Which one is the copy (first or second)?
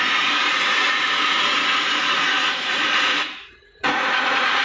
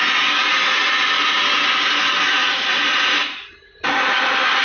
first